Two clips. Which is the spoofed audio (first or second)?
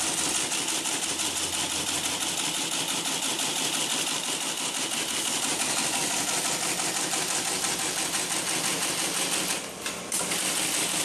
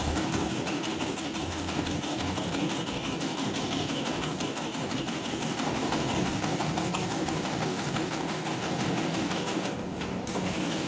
second